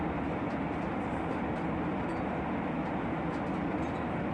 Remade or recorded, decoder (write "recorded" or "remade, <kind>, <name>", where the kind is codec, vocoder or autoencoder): recorded